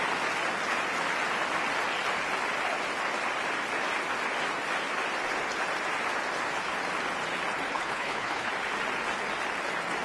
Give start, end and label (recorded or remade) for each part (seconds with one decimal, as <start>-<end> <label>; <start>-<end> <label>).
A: 0.0-7.7 recorded; 7.7-8.5 remade; 8.5-10.0 recorded